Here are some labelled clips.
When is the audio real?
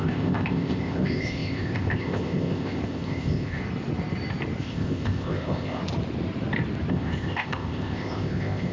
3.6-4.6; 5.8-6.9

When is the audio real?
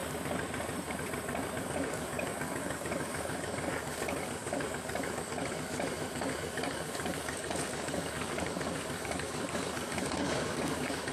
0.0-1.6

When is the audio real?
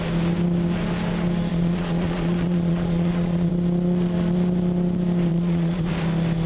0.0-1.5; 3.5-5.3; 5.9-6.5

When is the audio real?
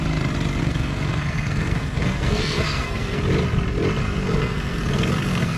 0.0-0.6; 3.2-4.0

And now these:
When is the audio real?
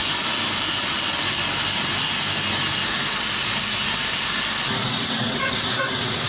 0.0-4.8